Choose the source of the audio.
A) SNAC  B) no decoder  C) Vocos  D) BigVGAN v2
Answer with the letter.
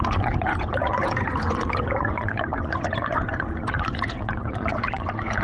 C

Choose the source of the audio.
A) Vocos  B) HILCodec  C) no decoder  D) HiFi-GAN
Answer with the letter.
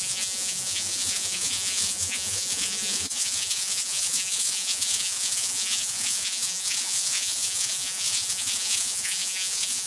A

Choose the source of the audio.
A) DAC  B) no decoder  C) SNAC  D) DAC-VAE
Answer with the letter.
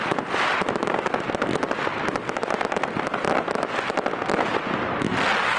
B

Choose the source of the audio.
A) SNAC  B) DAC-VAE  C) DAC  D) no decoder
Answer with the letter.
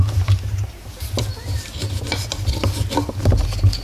D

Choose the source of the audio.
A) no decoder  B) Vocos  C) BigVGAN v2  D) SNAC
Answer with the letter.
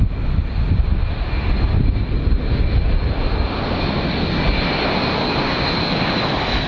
A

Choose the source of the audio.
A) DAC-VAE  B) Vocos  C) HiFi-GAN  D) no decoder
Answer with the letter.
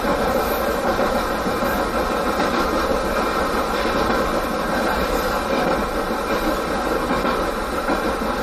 D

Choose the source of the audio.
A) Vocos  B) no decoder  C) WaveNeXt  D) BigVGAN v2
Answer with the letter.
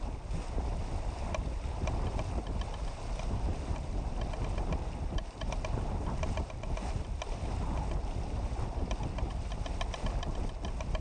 B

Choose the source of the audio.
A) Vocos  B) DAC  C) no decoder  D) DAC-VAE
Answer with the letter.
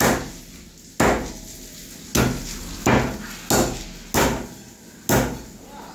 C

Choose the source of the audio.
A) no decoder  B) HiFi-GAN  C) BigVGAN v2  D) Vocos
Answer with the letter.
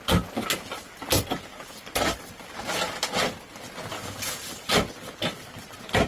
A